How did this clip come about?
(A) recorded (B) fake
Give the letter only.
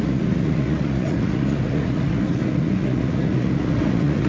B